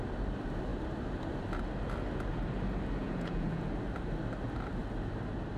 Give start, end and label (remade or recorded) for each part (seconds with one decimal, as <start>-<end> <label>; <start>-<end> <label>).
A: 0.0-3.0 recorded; 3.0-3.7 remade; 3.7-5.6 recorded